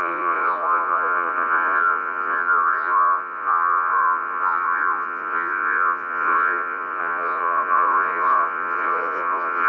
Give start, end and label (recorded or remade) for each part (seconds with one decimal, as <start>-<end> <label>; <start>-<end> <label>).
0.0-9.7 remade